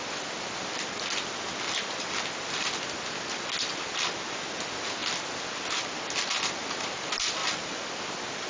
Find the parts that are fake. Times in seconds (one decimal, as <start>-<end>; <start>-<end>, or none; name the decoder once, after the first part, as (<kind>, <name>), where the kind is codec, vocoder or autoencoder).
none